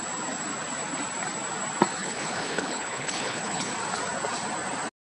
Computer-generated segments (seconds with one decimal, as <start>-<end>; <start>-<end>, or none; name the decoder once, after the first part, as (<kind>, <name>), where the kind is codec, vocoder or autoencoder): 2.0-3.7 (codec, HILCodec)